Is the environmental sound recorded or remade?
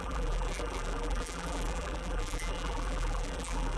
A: remade